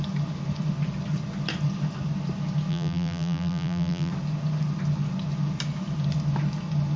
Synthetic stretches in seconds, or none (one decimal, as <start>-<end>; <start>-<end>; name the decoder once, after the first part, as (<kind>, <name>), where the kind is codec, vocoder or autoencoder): 2.7-4.1 (vocoder, BigVGAN v2)